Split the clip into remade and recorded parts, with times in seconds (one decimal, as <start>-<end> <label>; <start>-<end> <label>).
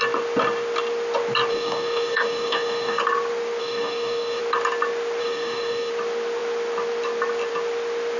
0.0-1.5 recorded; 1.5-3.0 remade; 3.0-3.6 recorded; 3.6-4.4 remade; 4.4-5.2 recorded; 5.2-5.9 remade; 5.9-8.2 recorded